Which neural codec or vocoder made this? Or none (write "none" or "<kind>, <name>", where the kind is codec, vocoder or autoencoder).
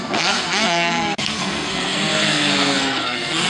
codec, SNAC